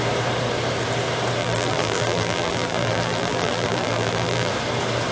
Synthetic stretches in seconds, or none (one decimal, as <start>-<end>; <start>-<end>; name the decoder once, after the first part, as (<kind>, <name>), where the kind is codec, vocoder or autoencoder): 1.4-4.5 (vocoder, BigVGAN v2)

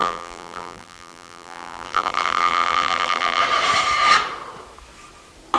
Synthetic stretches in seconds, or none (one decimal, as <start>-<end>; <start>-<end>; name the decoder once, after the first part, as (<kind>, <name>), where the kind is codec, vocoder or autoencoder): 0.0-3.4 (vocoder, BigVGAN v2)

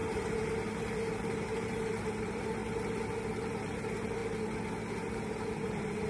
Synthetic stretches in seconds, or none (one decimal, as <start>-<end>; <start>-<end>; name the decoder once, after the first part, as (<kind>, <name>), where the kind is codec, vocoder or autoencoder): 0.0-2.6 (vocoder, BigVGAN v2); 3.4-4.2; 5.1-6.1

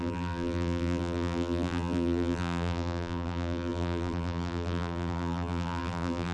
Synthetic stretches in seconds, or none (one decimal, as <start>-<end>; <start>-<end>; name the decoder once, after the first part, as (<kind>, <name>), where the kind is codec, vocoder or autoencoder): 0.0-6.3 (vocoder, BigVGAN v2)